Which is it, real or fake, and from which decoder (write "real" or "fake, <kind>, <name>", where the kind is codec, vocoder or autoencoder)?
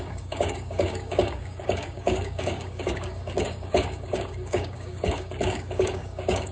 fake, codec, DAC